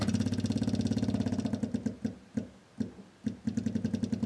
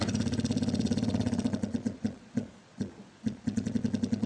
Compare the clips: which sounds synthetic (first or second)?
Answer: second